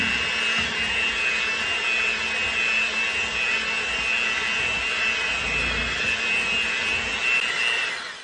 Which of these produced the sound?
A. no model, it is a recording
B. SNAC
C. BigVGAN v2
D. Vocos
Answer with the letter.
A